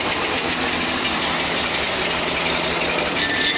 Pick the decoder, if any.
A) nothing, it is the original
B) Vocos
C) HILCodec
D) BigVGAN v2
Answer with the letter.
A